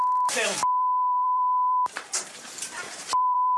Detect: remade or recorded remade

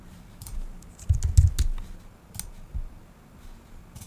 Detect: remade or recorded recorded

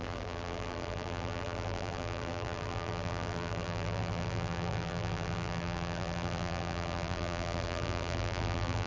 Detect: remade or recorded remade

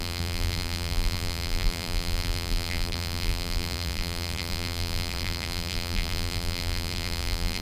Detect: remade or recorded remade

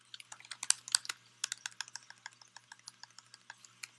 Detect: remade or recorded recorded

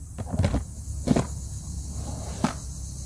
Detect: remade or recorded recorded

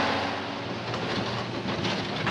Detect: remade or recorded recorded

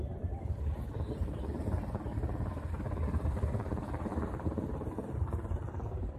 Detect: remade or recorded remade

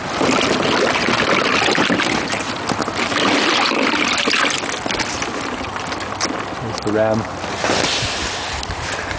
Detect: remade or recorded recorded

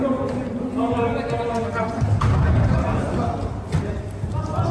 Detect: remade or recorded recorded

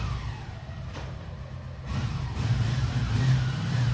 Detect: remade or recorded recorded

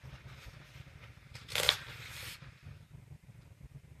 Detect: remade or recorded recorded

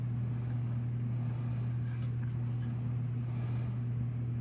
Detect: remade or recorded recorded